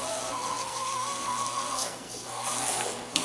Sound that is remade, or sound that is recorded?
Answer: remade